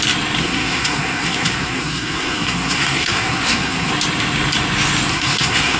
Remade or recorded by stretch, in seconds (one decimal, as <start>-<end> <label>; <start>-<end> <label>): 0.0-0.4 recorded; 0.4-3.9 remade; 3.9-5.1 recorded; 5.1-5.8 remade